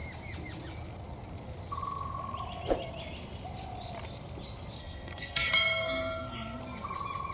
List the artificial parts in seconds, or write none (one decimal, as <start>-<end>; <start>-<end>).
4.8-6.6